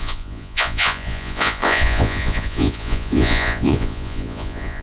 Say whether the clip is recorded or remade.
remade